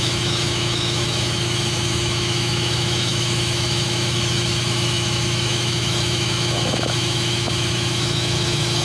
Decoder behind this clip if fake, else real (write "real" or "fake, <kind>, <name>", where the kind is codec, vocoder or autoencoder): fake, autoencoder, DAC-VAE